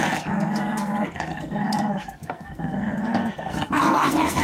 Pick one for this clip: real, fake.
fake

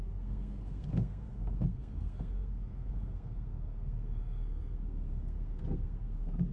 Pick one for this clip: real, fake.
fake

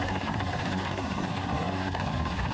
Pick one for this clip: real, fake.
fake